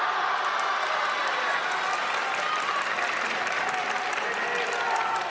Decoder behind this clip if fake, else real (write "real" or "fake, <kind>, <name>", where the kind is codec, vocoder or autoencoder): real